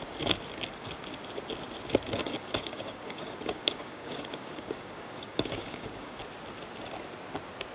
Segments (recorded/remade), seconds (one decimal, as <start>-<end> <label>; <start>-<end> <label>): 0.0-2.2 recorded; 2.2-6.2 remade; 6.2-7.7 recorded